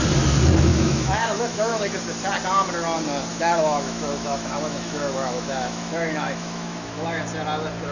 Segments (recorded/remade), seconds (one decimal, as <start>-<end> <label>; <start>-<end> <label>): 0.0-0.7 recorded; 0.7-1.9 remade; 1.9-3.3 recorded; 3.3-7.2 remade; 7.2-7.9 recorded